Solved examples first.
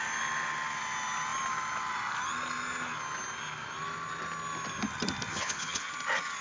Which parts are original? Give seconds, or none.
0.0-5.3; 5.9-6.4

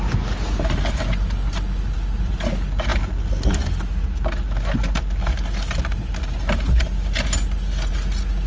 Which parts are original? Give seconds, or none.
0.0-8.5

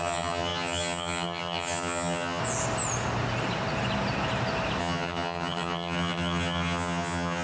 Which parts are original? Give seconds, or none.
2.4-4.8

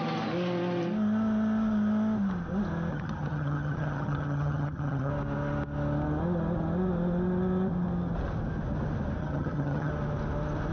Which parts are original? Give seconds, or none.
0.0-2.9; 5.1-9.2; 9.9-10.7

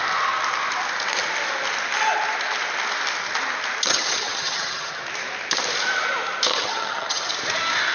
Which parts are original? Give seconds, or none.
0.0-3.9; 5.0-6.5; 7.3-7.9

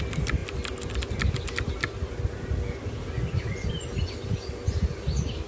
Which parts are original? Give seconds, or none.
0.0-5.5